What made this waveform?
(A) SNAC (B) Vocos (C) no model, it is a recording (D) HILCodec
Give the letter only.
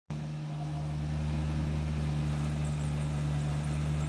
C